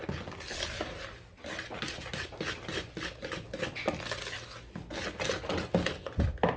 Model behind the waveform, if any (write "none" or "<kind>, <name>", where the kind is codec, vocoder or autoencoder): none